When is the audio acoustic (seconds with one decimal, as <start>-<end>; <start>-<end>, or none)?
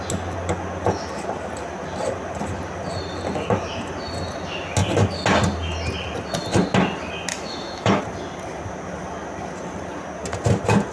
0.0-7.3; 8.0-10.9